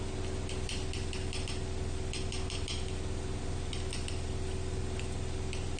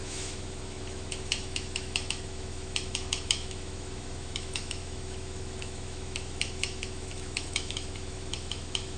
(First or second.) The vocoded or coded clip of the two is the second